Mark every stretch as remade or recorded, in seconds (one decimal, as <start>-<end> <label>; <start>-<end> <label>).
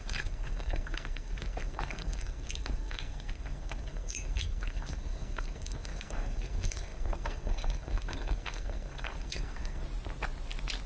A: 0.0-9.8 remade; 9.8-10.9 recorded